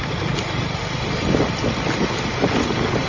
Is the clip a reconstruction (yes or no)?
no